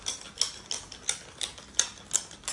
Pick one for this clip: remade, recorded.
recorded